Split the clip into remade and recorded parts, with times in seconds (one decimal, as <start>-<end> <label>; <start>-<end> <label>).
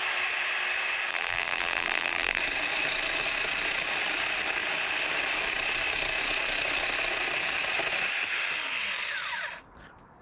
0.0-1.1 recorded; 1.1-2.4 remade; 2.4-10.2 recorded